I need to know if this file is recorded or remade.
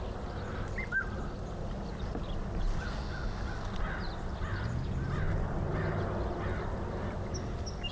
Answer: recorded